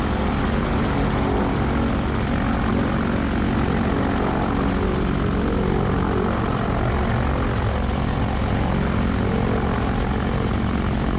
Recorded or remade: recorded